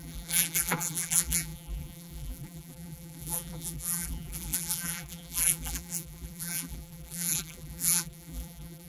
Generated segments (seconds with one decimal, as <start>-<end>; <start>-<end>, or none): 0.0-8.9